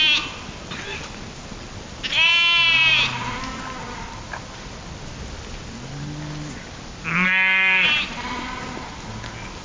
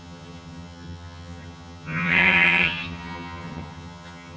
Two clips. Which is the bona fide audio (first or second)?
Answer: first